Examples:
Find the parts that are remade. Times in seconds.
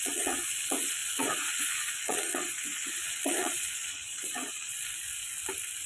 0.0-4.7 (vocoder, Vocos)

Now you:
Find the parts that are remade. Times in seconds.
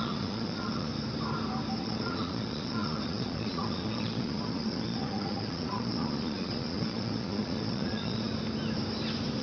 0.0-0.9 (vocoder, Vocos); 1.8-8.3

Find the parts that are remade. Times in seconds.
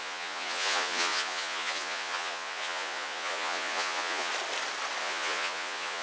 0.0-4.3 (vocoder, Vocos); 5.0-6.0